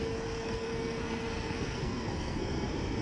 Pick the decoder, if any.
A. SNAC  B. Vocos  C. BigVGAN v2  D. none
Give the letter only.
A